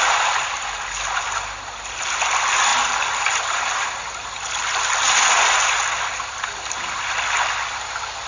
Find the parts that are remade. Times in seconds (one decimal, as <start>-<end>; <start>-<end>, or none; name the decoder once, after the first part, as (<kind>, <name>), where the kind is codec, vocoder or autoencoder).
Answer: none